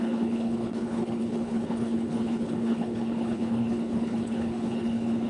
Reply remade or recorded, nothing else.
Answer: remade